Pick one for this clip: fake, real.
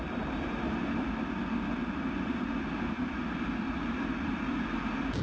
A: real